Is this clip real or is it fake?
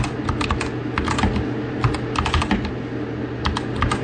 real